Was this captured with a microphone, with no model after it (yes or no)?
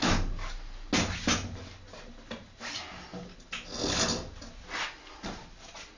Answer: yes